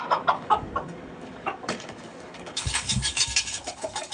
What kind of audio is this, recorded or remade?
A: remade